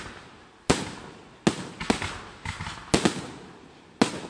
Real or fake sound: real